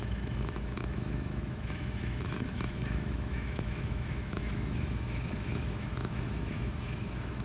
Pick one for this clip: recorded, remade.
remade